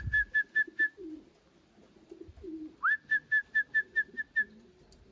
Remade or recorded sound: recorded